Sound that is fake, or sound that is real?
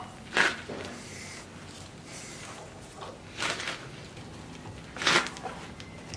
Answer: real